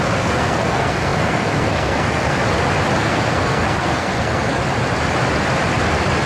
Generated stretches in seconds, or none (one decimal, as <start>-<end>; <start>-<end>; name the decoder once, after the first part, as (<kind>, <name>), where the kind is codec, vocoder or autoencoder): 0.0-2.4 (codec, SNAC); 3.0-4.6